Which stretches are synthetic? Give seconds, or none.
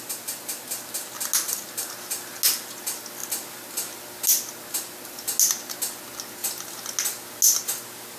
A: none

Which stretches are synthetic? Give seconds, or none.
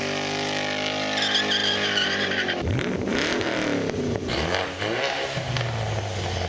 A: 1.6-5.5 (vocoder, BigVGAN v2)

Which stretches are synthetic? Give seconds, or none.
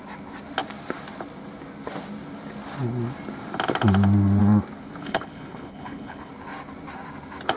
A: 5.0-6.3 (codec, HILCodec)